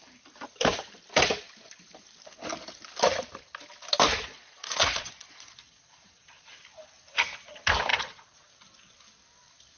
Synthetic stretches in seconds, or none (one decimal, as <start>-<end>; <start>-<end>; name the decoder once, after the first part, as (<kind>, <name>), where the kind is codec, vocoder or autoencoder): 4.3-6.5 (vocoder, Vocos); 7.9-8.5